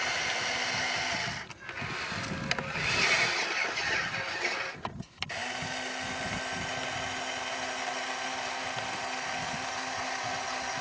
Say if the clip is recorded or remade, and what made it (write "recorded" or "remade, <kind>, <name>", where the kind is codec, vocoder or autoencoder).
recorded